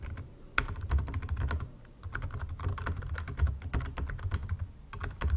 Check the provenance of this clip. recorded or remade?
recorded